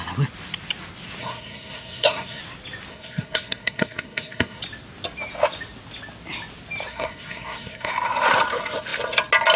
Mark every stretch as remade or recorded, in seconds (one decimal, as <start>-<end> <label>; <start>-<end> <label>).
0.0-1.2 recorded; 1.2-2.4 remade; 2.4-2.9 recorded; 2.9-4.6 remade; 4.6-6.9 recorded; 6.9-7.9 remade; 7.9-9.6 recorded